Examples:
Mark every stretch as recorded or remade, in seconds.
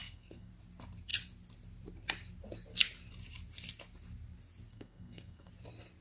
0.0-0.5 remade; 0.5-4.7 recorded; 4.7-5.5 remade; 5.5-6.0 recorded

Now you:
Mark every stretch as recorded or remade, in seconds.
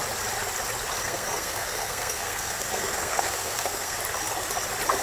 0.0-1.0 recorded; 1.0-4.0 remade; 4.0-5.0 recorded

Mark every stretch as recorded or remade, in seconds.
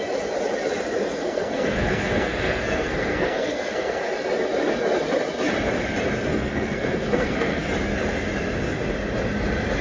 0.0-1.1 recorded; 1.1-4.0 remade; 4.0-6.3 recorded; 6.3-7.7 remade; 7.7-9.8 recorded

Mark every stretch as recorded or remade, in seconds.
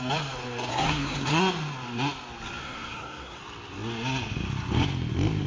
0.0-0.7 recorded; 0.7-1.4 remade; 1.4-2.6 recorded; 2.6-3.4 remade; 3.4-5.5 recorded